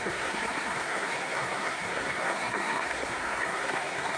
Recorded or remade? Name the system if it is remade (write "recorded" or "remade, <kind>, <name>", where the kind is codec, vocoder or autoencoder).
remade, codec, SNAC